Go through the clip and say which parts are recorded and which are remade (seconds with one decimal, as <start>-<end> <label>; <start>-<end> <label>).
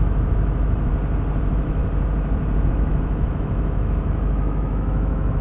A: 0.0-0.9 remade; 0.9-1.4 recorded; 1.4-1.8 remade; 1.8-2.7 recorded; 2.7-5.4 remade